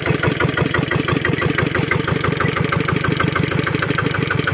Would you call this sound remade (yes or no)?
no